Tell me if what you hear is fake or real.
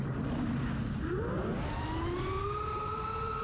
real